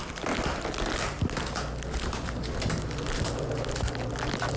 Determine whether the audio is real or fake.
real